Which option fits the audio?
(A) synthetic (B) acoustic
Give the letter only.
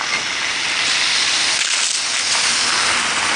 B